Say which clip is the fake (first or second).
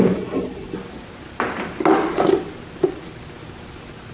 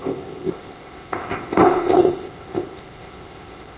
second